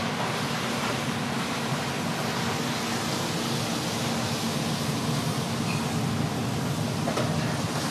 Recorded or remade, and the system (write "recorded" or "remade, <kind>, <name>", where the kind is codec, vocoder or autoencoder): recorded